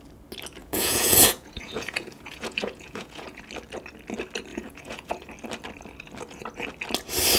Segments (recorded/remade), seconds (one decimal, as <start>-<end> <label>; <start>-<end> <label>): 0.0-0.6 recorded; 0.6-3.4 remade; 3.4-4.5 recorded; 4.5-5.3 remade; 5.3-7.4 recorded